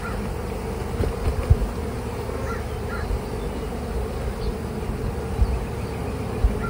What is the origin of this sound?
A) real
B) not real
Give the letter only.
A